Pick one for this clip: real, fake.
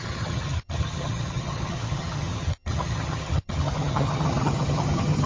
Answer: fake